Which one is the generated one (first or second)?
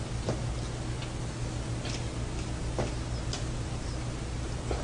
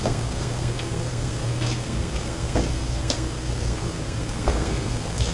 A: second